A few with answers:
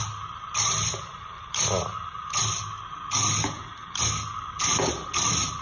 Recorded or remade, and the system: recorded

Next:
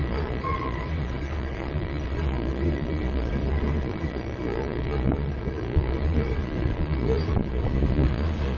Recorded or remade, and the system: remade, vocoder, Vocos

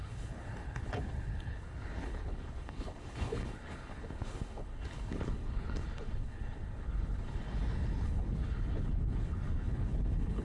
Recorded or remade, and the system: remade, codec, HILCodec